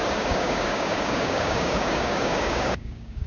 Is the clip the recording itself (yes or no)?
no